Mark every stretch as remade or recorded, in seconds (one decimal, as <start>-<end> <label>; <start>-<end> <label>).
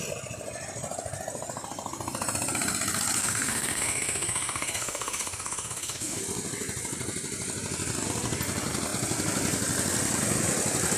0.0-3.2 recorded; 3.2-6.2 remade; 6.2-11.0 recorded